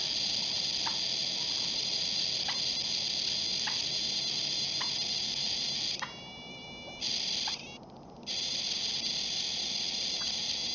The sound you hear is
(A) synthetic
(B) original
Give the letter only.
B